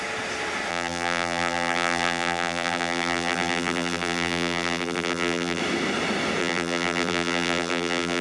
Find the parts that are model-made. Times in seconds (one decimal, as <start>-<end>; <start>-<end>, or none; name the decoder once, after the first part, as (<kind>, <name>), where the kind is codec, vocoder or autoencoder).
0.7-5.6 (vocoder, BigVGAN v2); 6.4-8.2